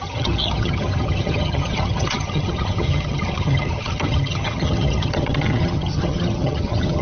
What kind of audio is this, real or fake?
fake